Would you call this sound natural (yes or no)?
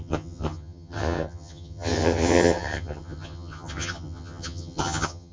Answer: no